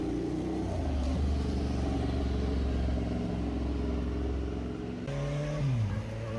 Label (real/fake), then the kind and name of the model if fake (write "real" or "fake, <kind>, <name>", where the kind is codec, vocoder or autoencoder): real